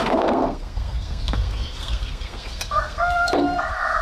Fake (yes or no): yes